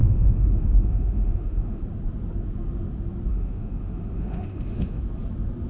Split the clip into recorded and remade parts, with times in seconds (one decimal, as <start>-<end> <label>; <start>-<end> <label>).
0.0-1.8 remade; 1.8-3.3 recorded; 3.3-5.0 remade; 5.0-5.7 recorded